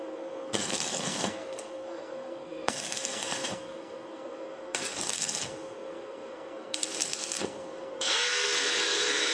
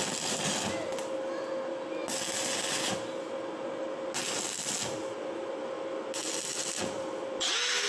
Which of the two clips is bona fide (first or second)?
second